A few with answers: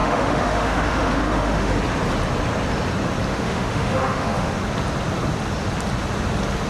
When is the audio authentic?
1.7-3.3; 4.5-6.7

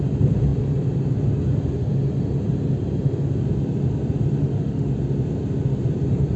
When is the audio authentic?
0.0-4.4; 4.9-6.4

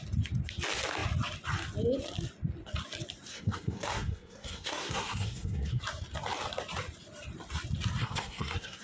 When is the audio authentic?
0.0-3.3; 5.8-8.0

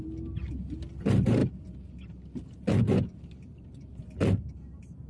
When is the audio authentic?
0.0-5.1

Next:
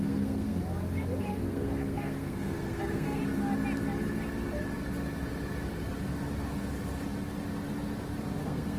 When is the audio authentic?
0.6-1.2; 3.2-8.4

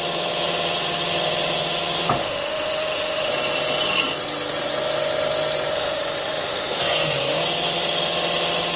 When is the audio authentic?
0.0-2.2; 3.3-5.7; 6.8-8.8